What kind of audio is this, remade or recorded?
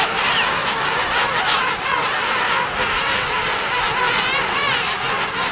recorded